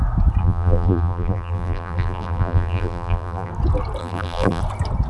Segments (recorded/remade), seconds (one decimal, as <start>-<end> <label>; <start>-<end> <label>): 0.0-0.4 recorded; 0.4-3.5 remade; 3.5-4.0 recorded; 4.0-4.6 remade; 4.6-5.1 recorded